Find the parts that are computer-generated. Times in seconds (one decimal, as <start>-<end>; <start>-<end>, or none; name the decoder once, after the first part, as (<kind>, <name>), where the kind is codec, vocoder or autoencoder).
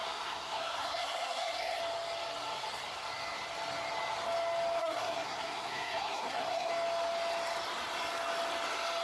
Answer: 0.0-1.8 (codec, SNAC); 4.8-6.7